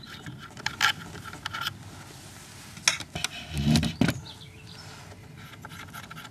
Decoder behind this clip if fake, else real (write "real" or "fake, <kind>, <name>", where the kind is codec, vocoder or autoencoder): real